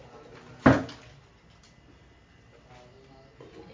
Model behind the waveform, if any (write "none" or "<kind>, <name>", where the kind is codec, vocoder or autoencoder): none